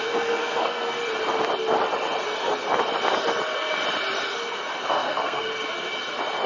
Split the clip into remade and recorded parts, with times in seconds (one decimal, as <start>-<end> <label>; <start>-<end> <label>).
0.0-1.0 remade; 1.0-4.9 recorded; 4.9-5.5 remade; 5.5-6.5 recorded